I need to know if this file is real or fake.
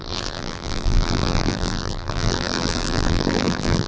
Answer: fake